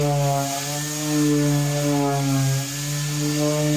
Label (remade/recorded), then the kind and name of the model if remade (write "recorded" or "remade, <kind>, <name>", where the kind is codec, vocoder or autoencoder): recorded